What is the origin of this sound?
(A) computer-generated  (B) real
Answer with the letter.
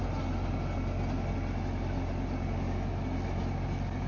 B